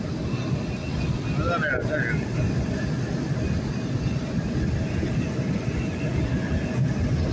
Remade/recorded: recorded